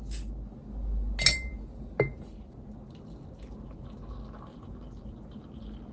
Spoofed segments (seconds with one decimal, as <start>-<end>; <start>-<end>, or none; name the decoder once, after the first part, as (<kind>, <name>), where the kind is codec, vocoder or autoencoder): none